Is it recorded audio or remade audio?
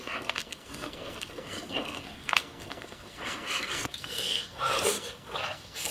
remade